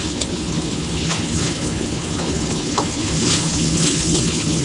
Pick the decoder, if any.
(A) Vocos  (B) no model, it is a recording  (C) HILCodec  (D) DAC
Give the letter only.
C